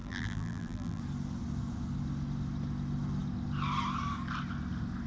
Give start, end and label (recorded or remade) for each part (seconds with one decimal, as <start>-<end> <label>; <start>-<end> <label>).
0.0-1.0 remade; 1.0-5.1 recorded